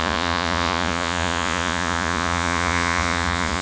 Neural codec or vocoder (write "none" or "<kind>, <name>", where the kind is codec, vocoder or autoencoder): vocoder, Vocos